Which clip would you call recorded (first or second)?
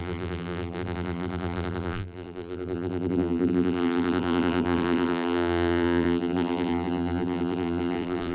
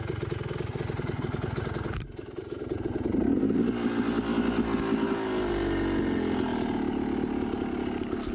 second